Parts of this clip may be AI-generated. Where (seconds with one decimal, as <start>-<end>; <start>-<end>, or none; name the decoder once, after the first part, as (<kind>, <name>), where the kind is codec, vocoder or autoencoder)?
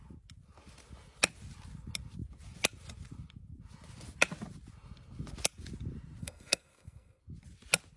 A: 6.2-7.2 (codec, SNAC)